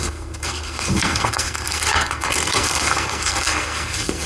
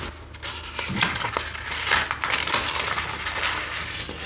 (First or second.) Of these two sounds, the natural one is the second